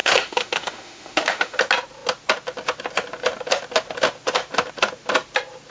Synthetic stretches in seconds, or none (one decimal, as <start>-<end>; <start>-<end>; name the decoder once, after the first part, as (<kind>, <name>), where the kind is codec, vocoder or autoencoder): 0.0-1.6 (autoencoder, DAC-VAE)